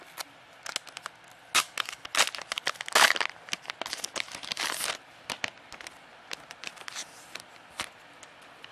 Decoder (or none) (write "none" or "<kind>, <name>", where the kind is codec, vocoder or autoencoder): none